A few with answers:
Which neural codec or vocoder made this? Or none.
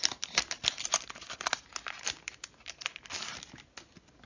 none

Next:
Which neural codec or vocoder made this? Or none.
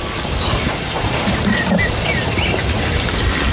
none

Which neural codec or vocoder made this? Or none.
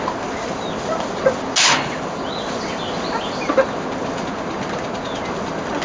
none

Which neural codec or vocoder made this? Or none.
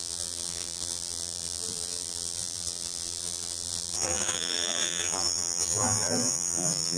vocoder, BigVGAN v2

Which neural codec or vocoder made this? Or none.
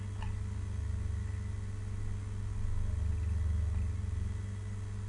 none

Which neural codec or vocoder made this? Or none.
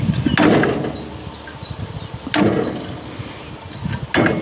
none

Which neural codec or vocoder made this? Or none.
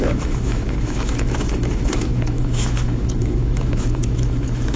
autoencoder, DAC-VAE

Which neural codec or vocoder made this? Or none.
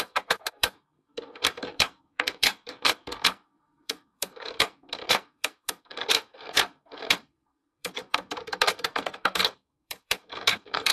codec, SNAC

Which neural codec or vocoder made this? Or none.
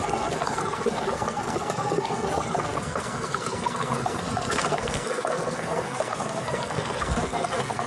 codec, SNAC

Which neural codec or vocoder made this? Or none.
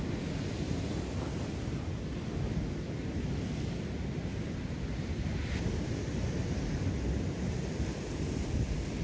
none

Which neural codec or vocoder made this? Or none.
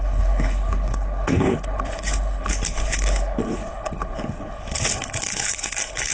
codec, HILCodec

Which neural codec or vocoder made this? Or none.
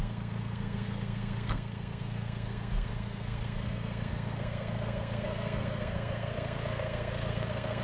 codec, SNAC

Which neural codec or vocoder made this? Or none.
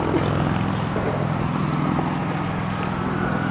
none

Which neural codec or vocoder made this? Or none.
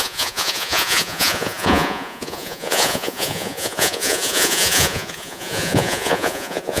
vocoder, Vocos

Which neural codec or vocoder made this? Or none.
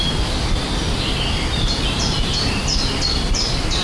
none